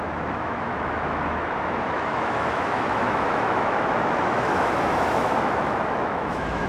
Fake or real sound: fake